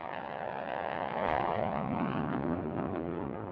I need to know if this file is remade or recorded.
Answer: remade